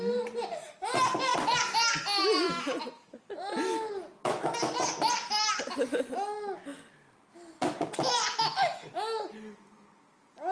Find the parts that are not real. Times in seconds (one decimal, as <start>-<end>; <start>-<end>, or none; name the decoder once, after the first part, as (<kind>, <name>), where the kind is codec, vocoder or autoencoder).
none